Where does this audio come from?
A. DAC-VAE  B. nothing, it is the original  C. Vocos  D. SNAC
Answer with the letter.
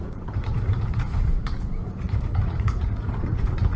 C